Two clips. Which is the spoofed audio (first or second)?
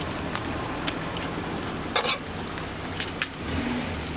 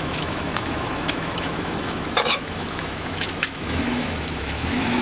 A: second